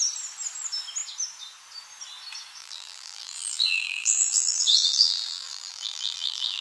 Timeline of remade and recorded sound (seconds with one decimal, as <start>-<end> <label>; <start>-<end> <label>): 0.0-2.6 recorded; 2.6-6.6 remade